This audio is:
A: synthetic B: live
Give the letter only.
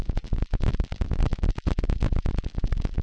B